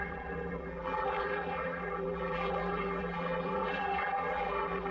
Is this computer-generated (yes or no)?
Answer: yes